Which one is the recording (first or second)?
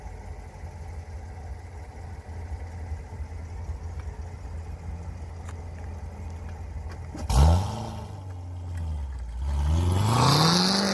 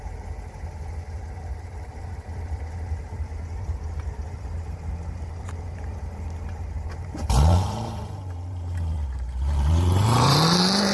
first